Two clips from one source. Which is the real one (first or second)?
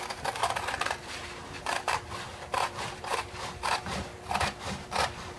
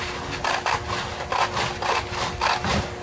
second